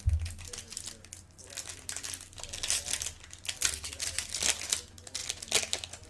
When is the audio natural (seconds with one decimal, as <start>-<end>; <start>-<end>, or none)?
0.0-6.1